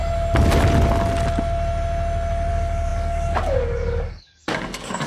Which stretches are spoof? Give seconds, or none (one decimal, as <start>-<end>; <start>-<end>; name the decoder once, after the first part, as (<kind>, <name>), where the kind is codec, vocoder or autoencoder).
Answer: 2.5-5.1 (codec, DAC)